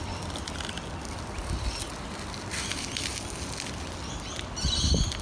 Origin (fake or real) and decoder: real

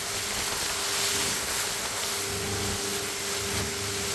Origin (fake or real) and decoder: real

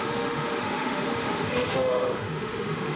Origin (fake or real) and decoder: fake, autoencoder, DAC-VAE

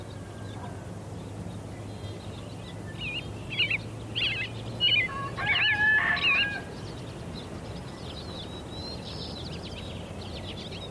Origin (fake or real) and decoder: real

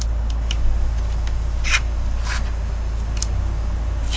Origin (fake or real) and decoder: real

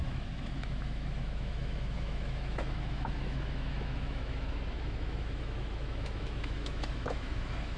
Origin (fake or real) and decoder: fake, autoencoder, DAC-VAE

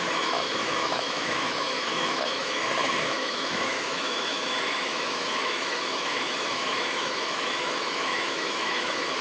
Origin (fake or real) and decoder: fake, autoencoder, DAC-VAE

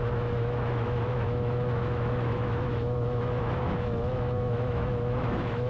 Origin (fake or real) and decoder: fake, autoencoder, DAC-VAE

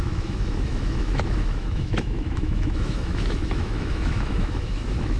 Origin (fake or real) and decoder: fake, autoencoder, DAC-VAE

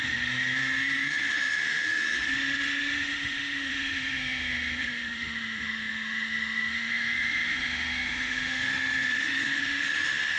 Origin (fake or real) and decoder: fake, autoencoder, DAC-VAE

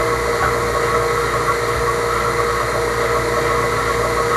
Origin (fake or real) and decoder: real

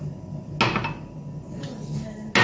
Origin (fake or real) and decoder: real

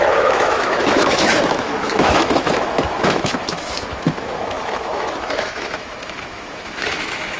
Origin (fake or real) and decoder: fake, autoencoder, DAC-VAE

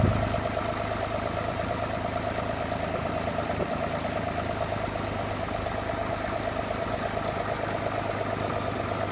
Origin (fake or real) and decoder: real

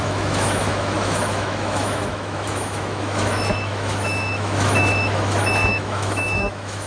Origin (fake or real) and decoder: fake, autoencoder, DAC-VAE